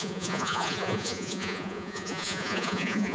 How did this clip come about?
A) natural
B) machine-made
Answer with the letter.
B